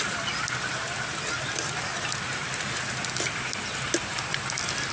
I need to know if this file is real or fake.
real